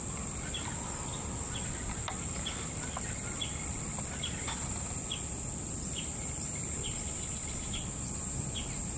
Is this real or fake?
real